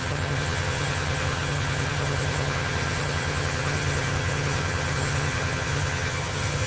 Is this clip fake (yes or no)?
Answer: yes